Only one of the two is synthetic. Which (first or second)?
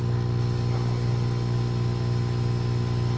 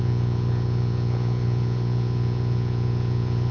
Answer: second